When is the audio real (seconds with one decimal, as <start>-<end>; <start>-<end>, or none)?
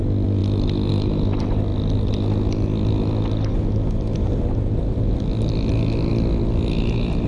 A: 0.0-7.3